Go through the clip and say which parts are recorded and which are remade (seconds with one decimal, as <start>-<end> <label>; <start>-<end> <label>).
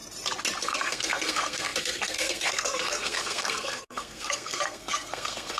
0.0-0.6 recorded; 0.6-5.6 remade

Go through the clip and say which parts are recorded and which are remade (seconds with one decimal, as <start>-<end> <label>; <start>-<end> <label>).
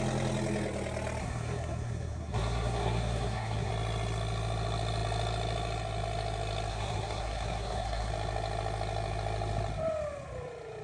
0.0-1.2 recorded; 1.2-3.7 remade; 3.7-6.7 recorded; 6.7-8.1 remade; 8.1-10.8 recorded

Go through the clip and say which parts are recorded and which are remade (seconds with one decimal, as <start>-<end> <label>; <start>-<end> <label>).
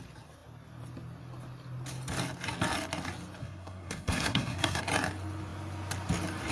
0.0-3.4 recorded; 3.4-4.8 remade; 4.8-6.5 recorded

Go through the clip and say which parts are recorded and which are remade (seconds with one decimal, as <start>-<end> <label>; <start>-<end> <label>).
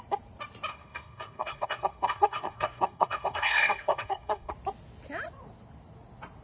0.0-0.7 recorded; 0.7-4.5 remade; 4.5-6.4 recorded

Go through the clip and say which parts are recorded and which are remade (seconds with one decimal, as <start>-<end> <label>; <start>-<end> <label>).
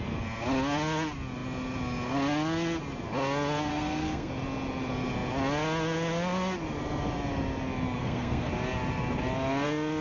0.0-3.7 recorded; 3.7-4.3 remade; 4.3-8.0 recorded; 8.0-8.5 remade; 8.5-10.0 recorded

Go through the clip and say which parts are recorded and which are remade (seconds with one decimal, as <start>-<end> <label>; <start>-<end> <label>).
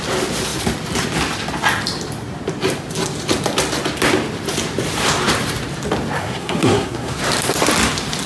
0.0-6.2 recorded; 6.2-7.2 remade; 7.2-8.3 recorded